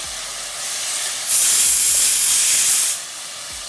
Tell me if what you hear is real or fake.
real